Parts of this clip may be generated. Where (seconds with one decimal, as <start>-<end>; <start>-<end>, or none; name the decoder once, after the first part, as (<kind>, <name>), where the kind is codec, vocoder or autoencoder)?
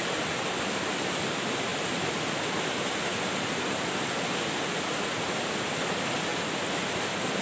0.0-1.7 (vocoder, BigVGAN v2); 5.4-6.3; 6.9-7.4